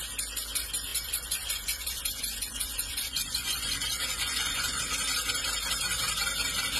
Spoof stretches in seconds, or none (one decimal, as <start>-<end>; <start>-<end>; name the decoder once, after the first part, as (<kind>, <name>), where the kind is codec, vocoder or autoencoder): 0.9-4.8 (vocoder, Vocos)